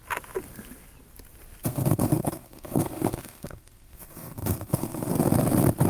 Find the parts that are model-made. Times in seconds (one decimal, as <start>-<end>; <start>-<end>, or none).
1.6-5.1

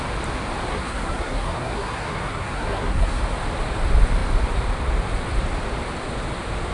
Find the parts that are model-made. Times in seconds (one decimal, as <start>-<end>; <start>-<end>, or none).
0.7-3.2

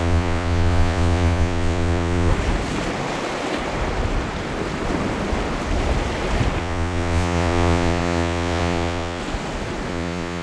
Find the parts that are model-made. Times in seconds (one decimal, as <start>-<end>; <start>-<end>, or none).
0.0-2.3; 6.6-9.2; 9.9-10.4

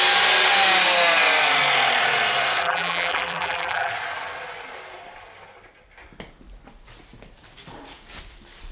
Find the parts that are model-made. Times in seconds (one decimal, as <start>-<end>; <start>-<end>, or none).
2.6-3.9